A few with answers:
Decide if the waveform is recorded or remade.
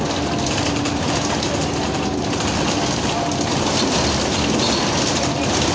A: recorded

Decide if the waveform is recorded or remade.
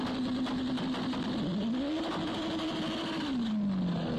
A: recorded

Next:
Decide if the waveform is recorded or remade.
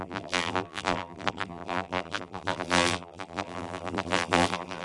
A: remade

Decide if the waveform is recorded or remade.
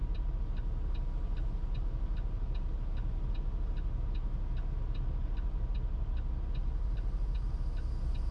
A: recorded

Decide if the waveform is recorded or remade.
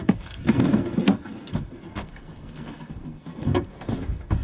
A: remade